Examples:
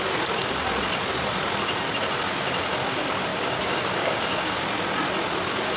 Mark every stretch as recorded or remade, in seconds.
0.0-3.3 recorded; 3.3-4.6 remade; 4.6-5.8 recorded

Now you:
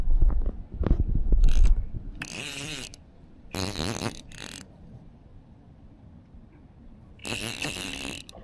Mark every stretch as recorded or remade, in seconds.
0.0-2.9 remade; 2.9-4.0 recorded; 4.0-7.2 remade; 7.2-7.8 recorded; 7.8-8.4 remade

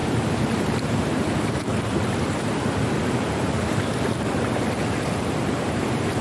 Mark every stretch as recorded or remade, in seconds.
0.0-1.7 remade; 1.7-3.1 recorded; 3.1-6.2 remade

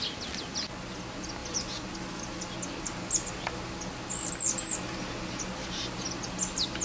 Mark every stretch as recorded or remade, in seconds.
0.0-6.8 recorded

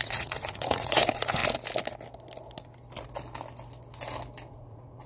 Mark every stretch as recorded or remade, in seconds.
0.0-1.4 remade; 1.4-4.5 recorded; 4.5-5.1 remade

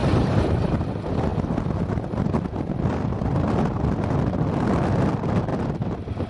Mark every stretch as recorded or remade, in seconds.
0.0-0.7 remade; 0.7-6.3 recorded

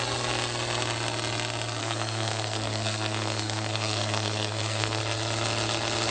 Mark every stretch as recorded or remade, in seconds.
0.0-1.8 recorded; 1.8-5.0 remade; 5.0-6.1 recorded

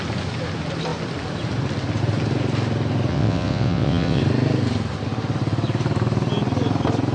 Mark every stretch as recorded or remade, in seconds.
0.0-3.1 recorded; 3.1-4.2 remade; 4.2-7.1 recorded